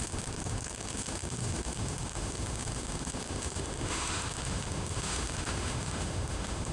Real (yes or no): no